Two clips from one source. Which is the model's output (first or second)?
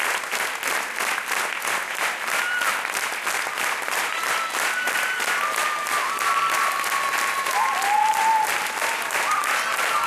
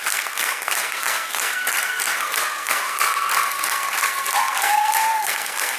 second